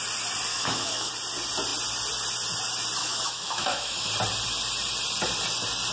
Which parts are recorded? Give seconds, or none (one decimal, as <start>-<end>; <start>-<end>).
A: 0.0-0.5; 1.1-3.0; 4.1-5.9